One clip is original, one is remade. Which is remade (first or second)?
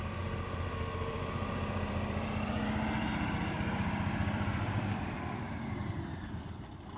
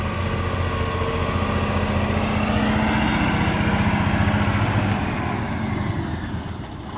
first